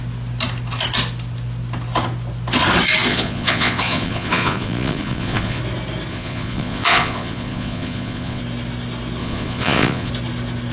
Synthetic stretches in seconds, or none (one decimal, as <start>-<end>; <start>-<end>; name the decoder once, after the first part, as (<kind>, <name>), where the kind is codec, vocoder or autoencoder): 3.1-5.6 (vocoder, Vocos); 6.1-8.4; 9.2-10.1